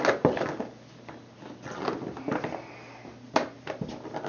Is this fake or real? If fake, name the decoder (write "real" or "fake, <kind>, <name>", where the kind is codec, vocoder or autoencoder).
real